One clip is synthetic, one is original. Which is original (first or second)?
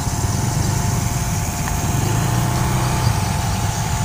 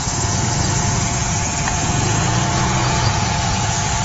first